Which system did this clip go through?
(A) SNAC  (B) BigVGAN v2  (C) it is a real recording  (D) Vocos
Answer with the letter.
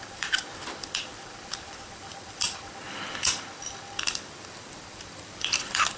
B